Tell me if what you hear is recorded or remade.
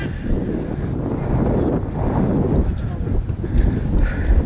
recorded